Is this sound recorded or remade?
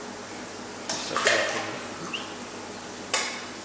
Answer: recorded